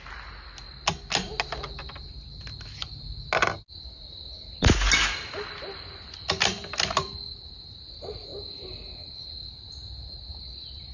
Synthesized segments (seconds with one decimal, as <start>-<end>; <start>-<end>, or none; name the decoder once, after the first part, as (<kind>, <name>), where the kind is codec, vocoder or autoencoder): none